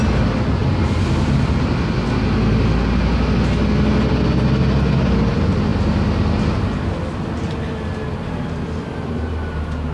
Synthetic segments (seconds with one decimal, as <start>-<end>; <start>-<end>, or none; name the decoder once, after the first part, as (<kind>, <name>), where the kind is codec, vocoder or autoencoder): none